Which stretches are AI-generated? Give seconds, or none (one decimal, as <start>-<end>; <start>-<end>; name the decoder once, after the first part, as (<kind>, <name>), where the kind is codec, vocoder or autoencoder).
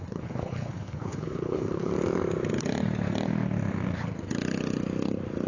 0.0-1.9 (codec, HILCodec)